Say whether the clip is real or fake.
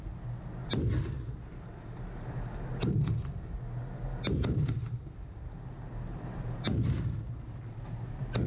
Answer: real